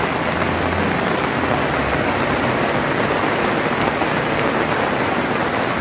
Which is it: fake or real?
real